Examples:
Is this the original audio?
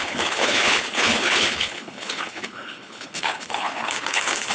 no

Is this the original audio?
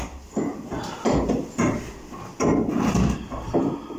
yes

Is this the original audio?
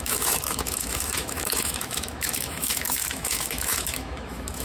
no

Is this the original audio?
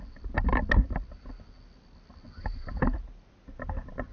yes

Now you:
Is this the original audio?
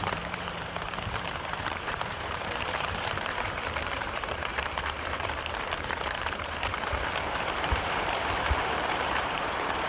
no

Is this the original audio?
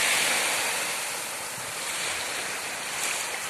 no